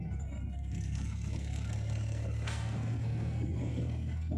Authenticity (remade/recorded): remade